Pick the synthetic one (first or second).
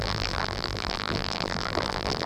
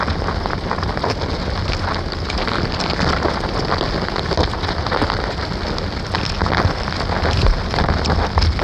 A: first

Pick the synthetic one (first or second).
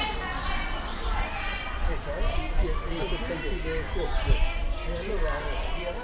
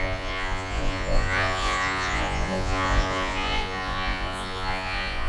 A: second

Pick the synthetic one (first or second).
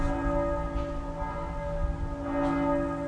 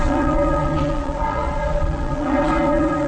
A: second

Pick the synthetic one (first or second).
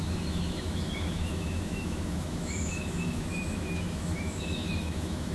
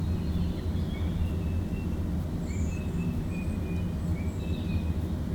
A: first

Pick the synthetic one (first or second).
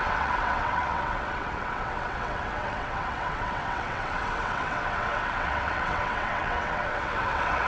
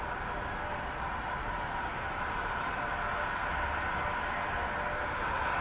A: first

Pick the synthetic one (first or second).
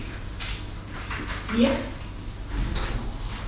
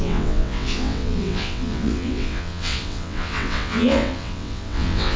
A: second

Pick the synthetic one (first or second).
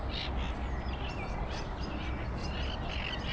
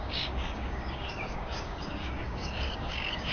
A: second